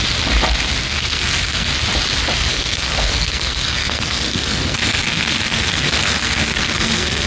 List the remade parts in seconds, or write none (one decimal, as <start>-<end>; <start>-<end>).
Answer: 0.8-1.7; 2.5-7.3